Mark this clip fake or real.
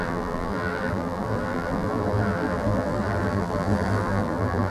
fake